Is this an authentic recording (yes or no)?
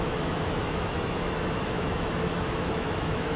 no